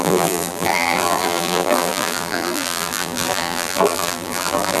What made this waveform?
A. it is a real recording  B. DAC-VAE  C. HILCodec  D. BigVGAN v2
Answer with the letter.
D